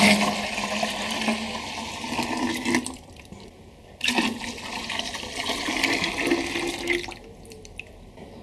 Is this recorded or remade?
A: recorded